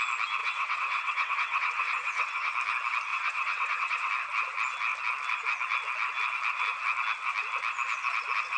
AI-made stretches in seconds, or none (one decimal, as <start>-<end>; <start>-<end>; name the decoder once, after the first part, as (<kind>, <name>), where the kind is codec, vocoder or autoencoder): 0.4-2.5 (vocoder, WaveNeXt); 3.1-4.1